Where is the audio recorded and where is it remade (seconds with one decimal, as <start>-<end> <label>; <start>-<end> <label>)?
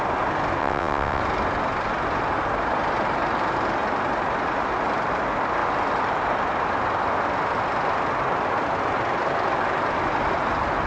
0.0-0.6 recorded; 0.6-1.2 remade; 1.2-10.9 recorded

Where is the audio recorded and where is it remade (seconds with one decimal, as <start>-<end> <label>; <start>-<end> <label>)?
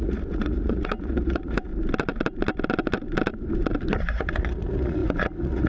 0.0-1.7 remade; 1.7-4.0 recorded; 4.0-5.7 remade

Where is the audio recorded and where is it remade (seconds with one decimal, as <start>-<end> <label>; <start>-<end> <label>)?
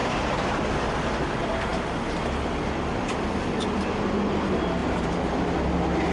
0.0-0.6 remade; 0.6-4.8 recorded; 4.8-5.3 remade; 5.3-6.1 recorded